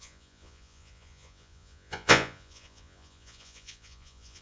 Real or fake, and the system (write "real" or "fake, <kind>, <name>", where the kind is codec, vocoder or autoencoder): fake, vocoder, Vocos